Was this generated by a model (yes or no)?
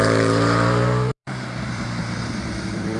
yes